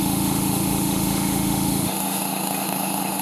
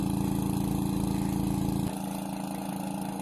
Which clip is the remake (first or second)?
first